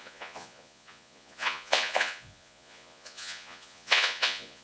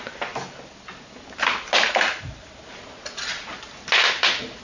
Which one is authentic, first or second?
second